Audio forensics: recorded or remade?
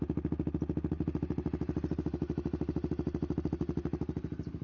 recorded